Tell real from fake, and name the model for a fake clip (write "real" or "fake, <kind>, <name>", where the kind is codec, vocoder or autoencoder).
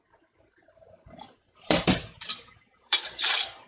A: fake, vocoder, BigVGAN v2